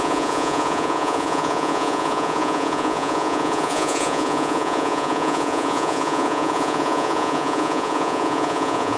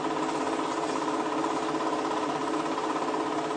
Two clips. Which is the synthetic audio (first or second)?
first